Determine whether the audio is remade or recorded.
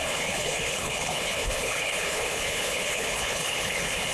remade